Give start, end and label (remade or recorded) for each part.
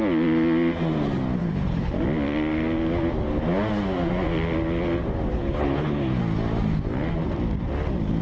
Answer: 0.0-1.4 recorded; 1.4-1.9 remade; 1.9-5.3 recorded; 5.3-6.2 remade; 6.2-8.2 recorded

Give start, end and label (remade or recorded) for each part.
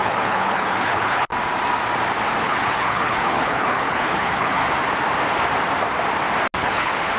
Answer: 0.0-1.3 remade; 1.3-2.4 recorded; 2.4-4.6 remade; 4.6-6.6 recorded; 6.6-7.2 remade